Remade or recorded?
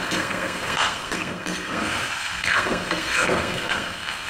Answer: remade